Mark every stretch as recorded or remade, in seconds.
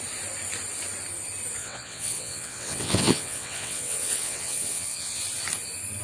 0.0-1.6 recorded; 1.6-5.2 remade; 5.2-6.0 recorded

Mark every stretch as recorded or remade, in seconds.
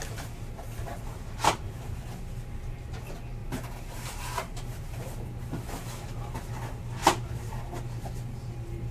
0.0-3.4 recorded; 3.4-5.0 remade; 5.0-7.0 recorded; 7.0-7.6 remade; 7.6-8.9 recorded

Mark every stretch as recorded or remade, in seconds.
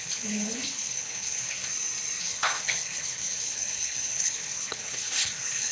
0.0-1.7 remade; 1.7-2.2 recorded; 2.2-5.7 remade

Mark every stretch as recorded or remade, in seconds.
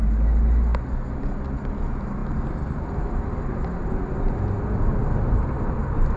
0.0-6.2 recorded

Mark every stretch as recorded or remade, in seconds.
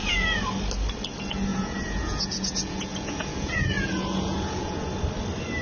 0.0-0.5 remade; 0.5-1.5 recorded; 1.5-4.9 remade; 4.9-5.6 recorded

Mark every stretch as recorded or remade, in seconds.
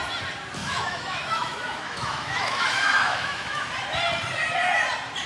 0.0-0.6 recorded; 0.6-3.7 remade; 3.7-5.3 recorded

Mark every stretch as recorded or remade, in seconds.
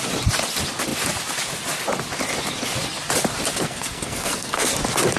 0.0-3.5 recorded; 3.5-4.7 remade; 4.7-5.2 recorded